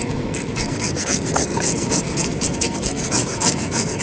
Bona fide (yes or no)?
no